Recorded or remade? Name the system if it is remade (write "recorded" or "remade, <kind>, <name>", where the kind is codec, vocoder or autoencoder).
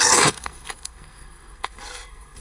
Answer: remade, codec, SNAC